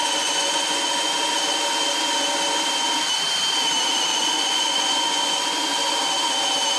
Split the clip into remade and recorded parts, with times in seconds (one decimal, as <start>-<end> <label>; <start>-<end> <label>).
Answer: 0.0-1.1 remade; 1.1-4.1 recorded; 4.1-5.9 remade; 5.9-6.8 recorded